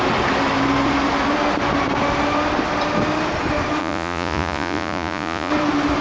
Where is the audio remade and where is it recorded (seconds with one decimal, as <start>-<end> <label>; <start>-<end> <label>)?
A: 0.0-3.8 recorded; 3.8-5.5 remade; 5.5-6.0 recorded